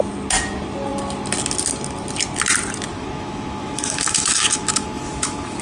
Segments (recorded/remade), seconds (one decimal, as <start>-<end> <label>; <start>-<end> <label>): 0.0-2.9 recorded; 2.9-5.6 remade